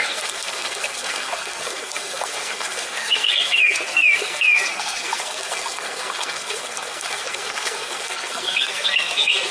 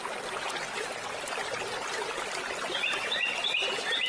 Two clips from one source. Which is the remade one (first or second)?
first